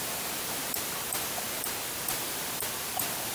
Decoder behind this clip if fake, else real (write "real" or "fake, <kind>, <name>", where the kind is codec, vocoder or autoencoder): fake, vocoder, BigVGAN v2